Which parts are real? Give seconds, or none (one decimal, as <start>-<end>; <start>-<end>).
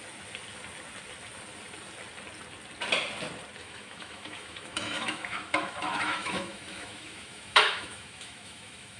0.0-3.6